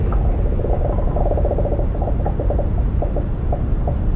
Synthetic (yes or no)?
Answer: no